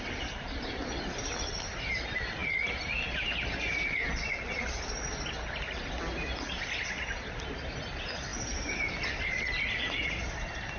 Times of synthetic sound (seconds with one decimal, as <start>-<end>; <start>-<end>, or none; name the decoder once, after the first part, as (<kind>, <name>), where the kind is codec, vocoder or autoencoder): none